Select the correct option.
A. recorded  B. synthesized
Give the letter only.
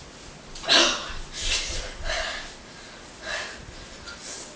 A